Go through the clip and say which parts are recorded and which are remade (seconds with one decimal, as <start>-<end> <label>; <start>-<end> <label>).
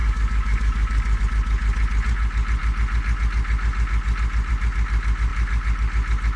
0.0-1.2 remade; 1.2-6.4 recorded